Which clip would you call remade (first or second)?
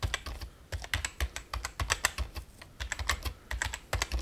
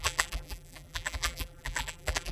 second